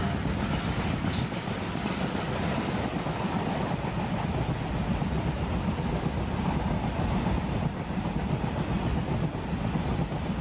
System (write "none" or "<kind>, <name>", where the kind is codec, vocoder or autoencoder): none